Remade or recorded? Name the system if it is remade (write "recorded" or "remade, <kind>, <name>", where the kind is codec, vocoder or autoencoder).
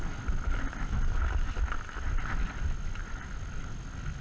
recorded